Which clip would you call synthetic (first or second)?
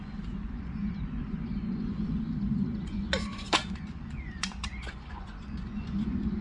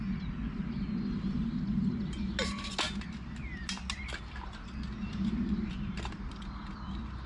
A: first